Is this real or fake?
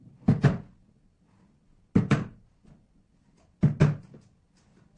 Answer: real